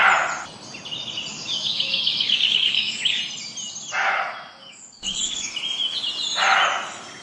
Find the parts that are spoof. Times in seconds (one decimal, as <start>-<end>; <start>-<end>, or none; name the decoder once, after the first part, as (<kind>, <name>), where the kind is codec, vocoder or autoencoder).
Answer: 1.3-3.2 (codec, DAC); 4.6-5.5